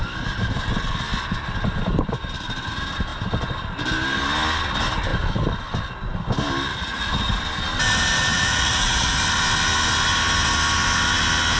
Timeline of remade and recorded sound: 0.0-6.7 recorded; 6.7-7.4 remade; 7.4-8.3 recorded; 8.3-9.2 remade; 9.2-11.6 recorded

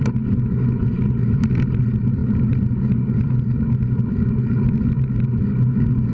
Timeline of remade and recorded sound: 0.0-6.1 recorded

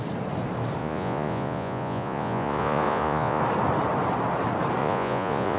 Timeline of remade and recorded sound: 0.0-0.8 recorded; 0.8-3.4 remade; 3.4-4.8 recorded; 4.8-5.6 remade

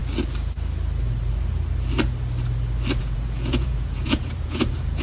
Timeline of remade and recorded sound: 0.0-3.0 recorded; 3.0-5.0 remade